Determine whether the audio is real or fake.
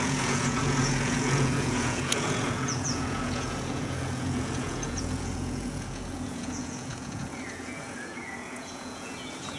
fake